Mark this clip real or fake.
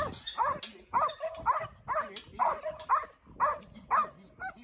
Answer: real